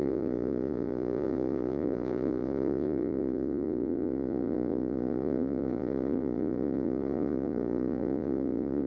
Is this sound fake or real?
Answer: fake